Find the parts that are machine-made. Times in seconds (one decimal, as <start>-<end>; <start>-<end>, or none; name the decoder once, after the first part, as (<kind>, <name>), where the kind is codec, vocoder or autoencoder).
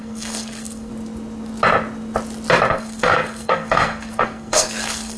0.0-0.9 (codec, SNAC); 2.7-5.2